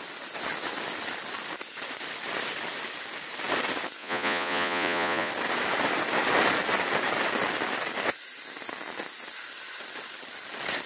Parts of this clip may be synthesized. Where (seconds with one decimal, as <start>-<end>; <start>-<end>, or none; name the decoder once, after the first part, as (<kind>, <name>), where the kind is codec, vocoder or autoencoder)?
4.0-5.3 (vocoder, Vocos)